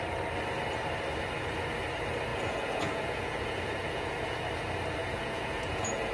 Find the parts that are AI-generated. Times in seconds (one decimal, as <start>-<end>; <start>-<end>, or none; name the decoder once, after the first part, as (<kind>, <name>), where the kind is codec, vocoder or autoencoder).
2.3-4.4 (vocoder, Vocos); 5.0-6.1

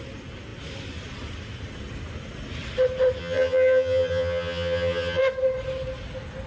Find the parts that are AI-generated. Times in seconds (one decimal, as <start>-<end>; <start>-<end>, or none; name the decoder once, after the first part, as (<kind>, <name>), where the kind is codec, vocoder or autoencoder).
3.2-5.2 (vocoder, HiFi-GAN)

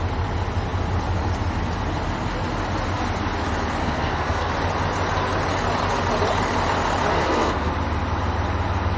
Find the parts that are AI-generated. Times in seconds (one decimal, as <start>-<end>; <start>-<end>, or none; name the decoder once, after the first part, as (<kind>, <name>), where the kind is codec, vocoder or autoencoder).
3.8-4.5 (codec, SNAC); 7.1-7.7

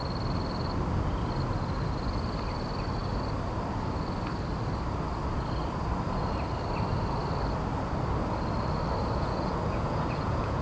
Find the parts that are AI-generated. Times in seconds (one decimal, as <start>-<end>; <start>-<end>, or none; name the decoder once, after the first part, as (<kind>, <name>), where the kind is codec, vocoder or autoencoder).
9.0-10.6 (vocoder, Vocos)

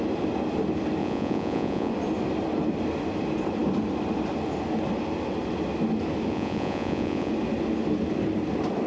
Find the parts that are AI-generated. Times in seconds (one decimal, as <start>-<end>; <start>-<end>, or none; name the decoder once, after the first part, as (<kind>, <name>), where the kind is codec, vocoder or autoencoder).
1.0-1.9 (vocoder, Vocos); 6.3-7.3

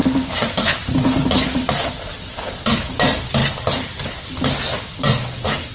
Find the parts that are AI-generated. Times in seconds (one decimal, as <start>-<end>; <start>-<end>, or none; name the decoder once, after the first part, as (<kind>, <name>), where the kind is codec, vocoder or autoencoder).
0.0-1.7 (vocoder, BigVGAN v2); 3.4-4.1

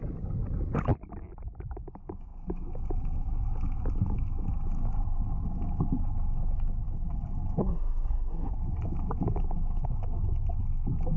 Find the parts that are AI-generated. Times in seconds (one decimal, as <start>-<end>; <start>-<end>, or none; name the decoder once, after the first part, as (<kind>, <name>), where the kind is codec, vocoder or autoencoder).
7.6-8.5 (codec, SNAC)